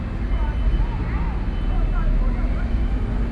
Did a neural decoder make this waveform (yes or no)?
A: no